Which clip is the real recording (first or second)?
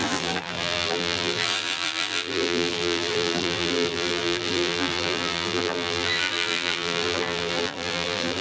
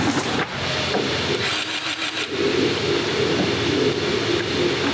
second